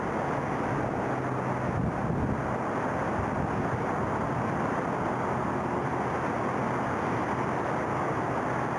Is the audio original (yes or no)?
yes